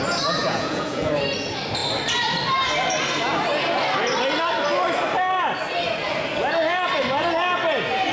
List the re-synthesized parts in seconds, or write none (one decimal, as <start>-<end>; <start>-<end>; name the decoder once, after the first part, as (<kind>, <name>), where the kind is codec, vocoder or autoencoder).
0.4-1.1 (vocoder, Vocos)